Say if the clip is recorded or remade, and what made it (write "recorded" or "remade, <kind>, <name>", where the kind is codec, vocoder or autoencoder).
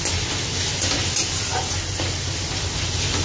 recorded